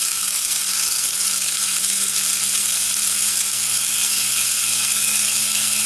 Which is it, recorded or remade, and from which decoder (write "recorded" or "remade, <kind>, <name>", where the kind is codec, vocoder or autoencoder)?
remade, codec, SNAC